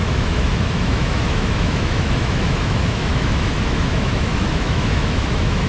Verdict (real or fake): fake